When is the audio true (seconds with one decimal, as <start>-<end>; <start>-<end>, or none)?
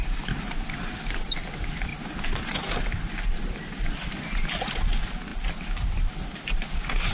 0.0-7.1